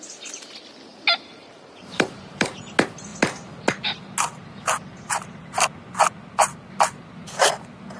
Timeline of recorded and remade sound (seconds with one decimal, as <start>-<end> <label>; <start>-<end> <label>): 0.0-0.9 recorded; 0.9-2.5 remade; 2.5-8.0 recorded